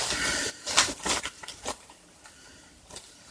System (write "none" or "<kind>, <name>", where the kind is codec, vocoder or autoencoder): none